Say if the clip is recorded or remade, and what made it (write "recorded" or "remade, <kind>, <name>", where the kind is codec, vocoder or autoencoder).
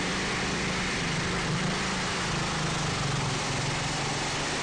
recorded